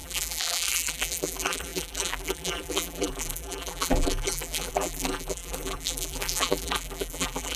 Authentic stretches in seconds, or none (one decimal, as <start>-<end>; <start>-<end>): none